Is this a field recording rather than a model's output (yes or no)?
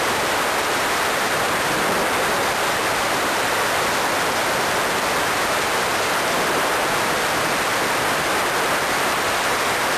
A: no